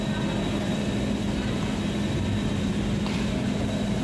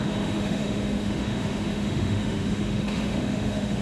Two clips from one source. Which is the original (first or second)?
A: first